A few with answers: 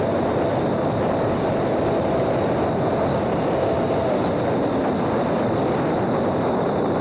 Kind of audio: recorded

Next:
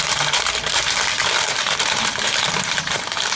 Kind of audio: remade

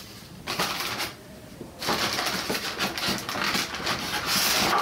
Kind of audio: recorded